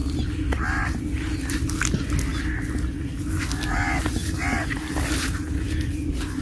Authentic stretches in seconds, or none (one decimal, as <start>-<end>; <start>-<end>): 0.0-6.4